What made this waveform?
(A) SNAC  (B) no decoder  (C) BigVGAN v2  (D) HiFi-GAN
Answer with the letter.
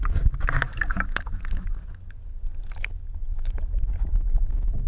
B